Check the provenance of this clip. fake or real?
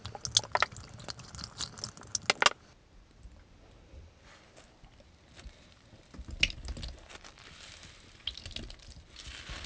real